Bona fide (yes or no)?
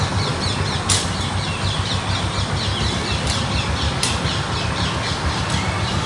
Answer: yes